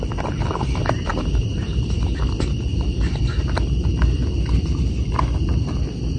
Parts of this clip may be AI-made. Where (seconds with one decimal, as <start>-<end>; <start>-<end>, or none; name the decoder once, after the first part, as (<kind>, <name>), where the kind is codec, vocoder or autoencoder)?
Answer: none